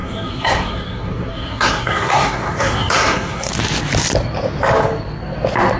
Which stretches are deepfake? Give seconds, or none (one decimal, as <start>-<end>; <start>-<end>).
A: 0.0-3.5